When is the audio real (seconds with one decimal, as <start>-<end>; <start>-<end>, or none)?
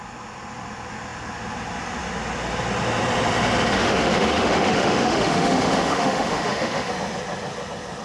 0.0-3.7; 6.9-8.0